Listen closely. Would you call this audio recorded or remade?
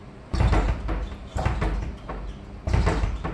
recorded